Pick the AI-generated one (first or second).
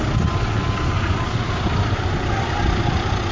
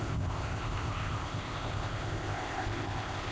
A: second